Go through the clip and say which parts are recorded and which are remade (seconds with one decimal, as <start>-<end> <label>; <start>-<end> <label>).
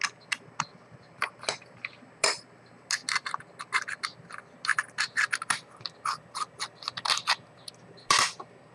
0.0-8.7 recorded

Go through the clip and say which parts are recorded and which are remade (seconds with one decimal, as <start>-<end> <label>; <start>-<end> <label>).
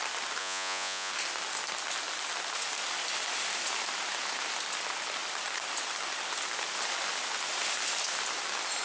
0.0-0.4 recorded; 0.4-1.1 remade; 1.1-8.8 recorded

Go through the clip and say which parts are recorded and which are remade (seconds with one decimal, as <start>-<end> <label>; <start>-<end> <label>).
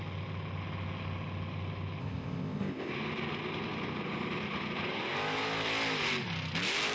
0.0-2.0 recorded; 2.0-2.9 remade; 2.9-6.9 recorded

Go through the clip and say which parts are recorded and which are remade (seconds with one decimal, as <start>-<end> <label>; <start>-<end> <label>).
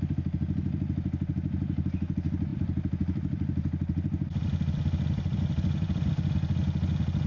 0.0-2.5 recorded; 2.5-6.1 remade; 6.1-7.3 recorded